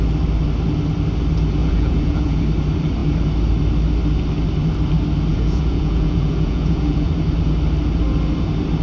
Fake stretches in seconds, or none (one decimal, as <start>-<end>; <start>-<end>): 1.6-2.4; 5.3-7.1

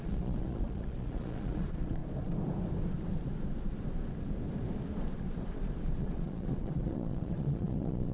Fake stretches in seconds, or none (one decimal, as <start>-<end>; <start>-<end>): 0.0-2.0; 6.0-8.1

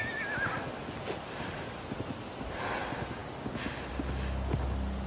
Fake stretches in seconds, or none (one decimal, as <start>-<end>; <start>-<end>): none

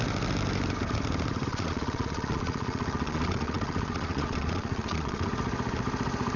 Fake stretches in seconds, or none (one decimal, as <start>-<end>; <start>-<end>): 1.5-5.3

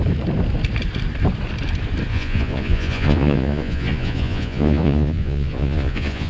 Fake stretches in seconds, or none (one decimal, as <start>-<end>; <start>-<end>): 2.1-6.3